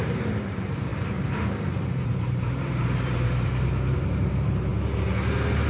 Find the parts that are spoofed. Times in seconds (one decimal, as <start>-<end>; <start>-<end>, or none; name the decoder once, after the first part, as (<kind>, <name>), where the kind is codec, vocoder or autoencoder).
0.0-4.7 (vocoder, BigVGAN v2)